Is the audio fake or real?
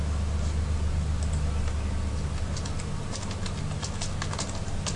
real